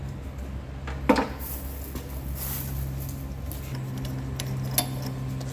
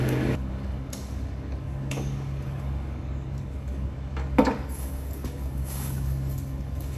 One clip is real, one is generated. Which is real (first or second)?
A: first